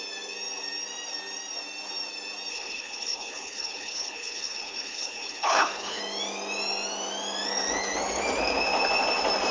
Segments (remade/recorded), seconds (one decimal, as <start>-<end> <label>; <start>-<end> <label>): 0.0-2.5 recorded; 2.5-6.0 remade; 6.0-9.5 recorded